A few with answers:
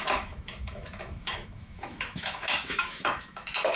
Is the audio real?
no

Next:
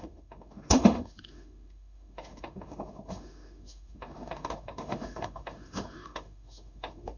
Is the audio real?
no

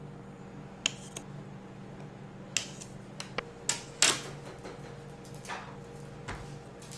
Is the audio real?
yes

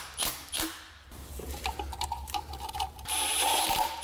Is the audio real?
no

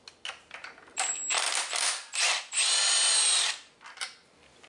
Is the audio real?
yes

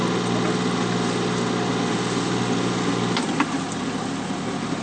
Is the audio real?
yes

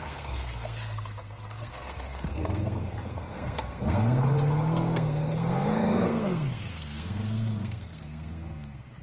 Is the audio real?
no